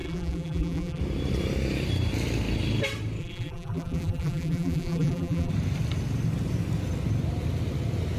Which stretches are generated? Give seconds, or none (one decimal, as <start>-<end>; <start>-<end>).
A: 0.0-1.0; 3.2-5.5